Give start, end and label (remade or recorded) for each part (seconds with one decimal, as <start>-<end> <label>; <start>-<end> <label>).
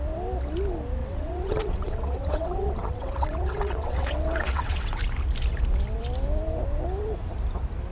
0.0-1.0 recorded; 1.0-5.0 remade; 5.0-7.9 recorded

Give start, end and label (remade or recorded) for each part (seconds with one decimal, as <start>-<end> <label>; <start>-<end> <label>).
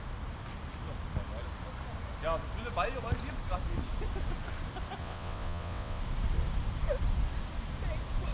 0.0-5.0 recorded; 5.0-6.0 remade; 6.0-8.3 recorded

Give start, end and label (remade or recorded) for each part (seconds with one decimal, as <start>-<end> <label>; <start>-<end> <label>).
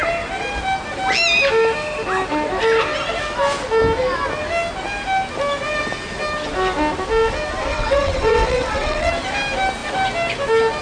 0.0-7.7 recorded; 7.7-9.1 remade; 9.1-10.8 recorded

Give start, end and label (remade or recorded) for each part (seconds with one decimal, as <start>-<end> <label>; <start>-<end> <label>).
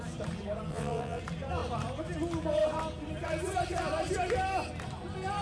0.0-0.7 recorded; 0.7-1.2 remade; 1.2-5.4 recorded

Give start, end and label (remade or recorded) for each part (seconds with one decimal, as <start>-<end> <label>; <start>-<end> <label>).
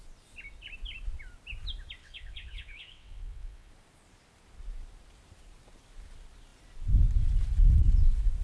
0.0-2.0 recorded; 2.0-3.7 remade; 3.7-8.4 recorded